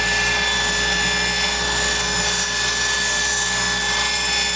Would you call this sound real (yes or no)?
yes